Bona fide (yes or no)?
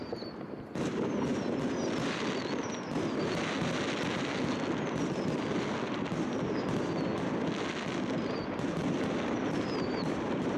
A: yes